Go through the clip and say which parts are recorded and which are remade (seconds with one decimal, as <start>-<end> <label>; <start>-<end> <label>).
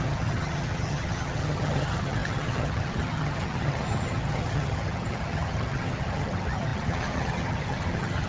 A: 0.0-8.3 remade